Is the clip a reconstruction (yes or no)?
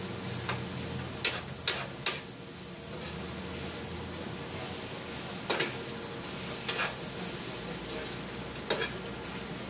no